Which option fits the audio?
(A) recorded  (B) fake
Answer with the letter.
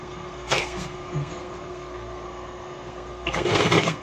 B